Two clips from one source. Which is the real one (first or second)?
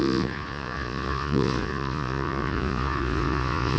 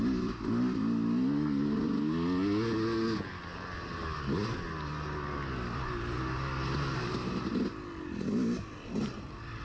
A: second